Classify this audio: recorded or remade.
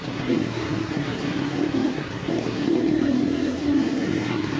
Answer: remade